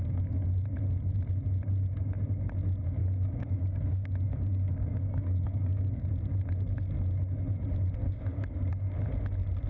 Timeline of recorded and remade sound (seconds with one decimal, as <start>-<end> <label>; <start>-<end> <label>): 0.0-3.0 recorded; 3.0-6.0 remade; 6.0-8.0 recorded; 8.0-8.7 remade; 8.7-9.7 recorded